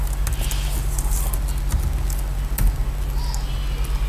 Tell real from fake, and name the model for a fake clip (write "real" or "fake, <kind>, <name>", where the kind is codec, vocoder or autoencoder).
real